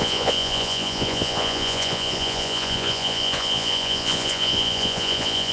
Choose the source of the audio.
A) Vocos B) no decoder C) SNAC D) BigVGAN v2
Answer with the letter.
A